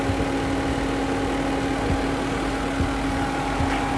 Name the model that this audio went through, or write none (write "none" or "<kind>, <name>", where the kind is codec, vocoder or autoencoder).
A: none